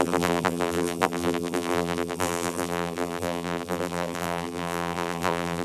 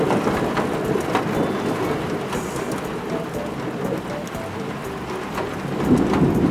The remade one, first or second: first